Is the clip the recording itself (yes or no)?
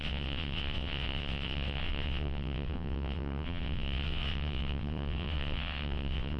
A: no